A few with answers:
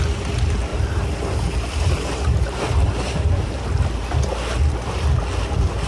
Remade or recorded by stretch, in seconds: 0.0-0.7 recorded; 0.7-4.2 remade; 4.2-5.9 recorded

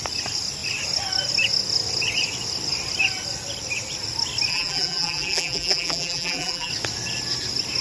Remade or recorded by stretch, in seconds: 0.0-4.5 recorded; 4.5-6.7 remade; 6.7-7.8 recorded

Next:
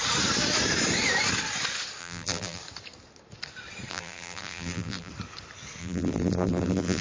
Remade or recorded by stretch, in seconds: 0.0-2.0 recorded; 2.0-2.6 remade; 2.6-3.9 recorded; 3.9-5.1 remade; 5.1-5.8 recorded; 5.8-7.0 remade